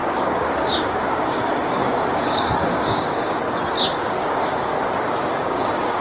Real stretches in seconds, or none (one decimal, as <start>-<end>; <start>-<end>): 3.4-4.1; 4.7-5.3